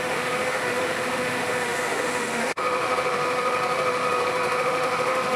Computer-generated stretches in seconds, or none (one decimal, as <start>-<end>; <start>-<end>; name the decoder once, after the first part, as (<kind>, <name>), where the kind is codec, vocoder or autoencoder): 0.0-5.4 (autoencoder, DAC-VAE)